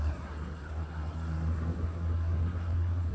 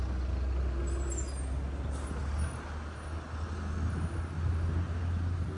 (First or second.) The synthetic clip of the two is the first